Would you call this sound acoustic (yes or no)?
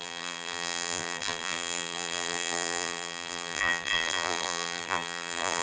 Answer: no